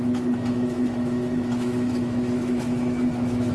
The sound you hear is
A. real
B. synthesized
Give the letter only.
B